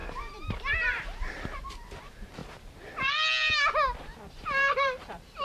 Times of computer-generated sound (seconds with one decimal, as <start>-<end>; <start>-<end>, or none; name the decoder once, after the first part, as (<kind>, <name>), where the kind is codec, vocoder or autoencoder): 0.0-2.4 (vocoder, BigVGAN v2); 4.3-5.4

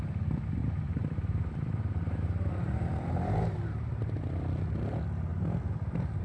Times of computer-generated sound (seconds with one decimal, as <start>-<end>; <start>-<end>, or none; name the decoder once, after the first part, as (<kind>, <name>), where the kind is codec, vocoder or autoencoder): 0.6-4.0 (vocoder, BigVGAN v2)

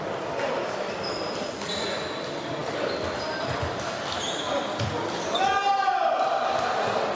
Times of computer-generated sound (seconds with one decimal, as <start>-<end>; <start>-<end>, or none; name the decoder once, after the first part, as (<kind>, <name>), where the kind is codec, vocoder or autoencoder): none

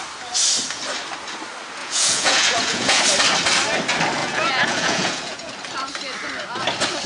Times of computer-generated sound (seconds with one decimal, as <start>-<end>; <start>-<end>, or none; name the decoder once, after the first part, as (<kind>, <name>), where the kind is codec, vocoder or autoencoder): 1.8-3.0 (vocoder, Vocos); 4.2-5.5

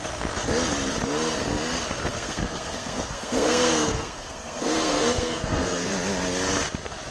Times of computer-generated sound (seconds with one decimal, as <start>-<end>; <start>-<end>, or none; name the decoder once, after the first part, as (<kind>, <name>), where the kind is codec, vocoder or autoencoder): 2.1-5.9 (codec, SNAC)

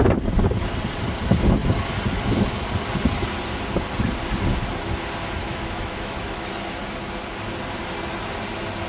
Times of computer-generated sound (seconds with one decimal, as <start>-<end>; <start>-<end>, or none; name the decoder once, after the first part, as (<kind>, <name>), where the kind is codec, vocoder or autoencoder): 5.4-6.5 (autoencoder, DAC-VAE)

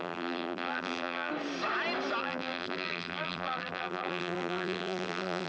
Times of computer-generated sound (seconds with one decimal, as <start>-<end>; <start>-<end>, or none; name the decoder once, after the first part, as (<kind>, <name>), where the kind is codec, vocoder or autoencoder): 0.0-1.3 (vocoder, BigVGAN v2); 2.2-5.5

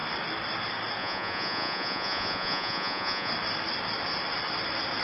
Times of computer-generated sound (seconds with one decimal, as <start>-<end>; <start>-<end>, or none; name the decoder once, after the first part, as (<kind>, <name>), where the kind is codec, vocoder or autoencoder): 1.0-3.3 (vocoder, Vocos)